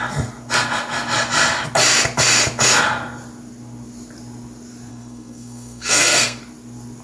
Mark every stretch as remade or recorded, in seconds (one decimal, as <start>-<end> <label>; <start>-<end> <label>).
0.0-4.9 recorded; 4.9-6.4 remade; 6.4-7.0 recorded